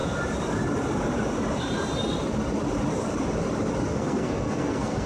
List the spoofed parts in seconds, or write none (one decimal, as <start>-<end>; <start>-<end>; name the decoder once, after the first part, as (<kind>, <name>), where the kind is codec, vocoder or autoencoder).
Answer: 3.9-5.1 (codec, SNAC)